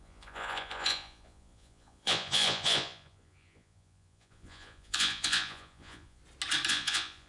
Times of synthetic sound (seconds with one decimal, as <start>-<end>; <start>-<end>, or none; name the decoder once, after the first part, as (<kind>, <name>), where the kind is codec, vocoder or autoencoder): 0.0-6.2 (vocoder, Vocos); 6.7-7.3